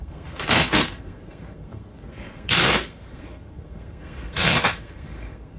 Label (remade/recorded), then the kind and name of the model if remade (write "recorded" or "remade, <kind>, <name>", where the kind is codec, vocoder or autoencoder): remade, codec, SNAC